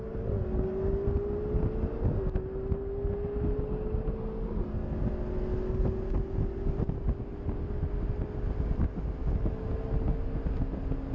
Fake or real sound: real